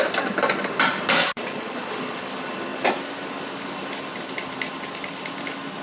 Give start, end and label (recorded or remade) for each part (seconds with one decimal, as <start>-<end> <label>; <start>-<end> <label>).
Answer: 0.0-1.2 recorded; 1.2-1.9 remade; 1.9-5.8 recorded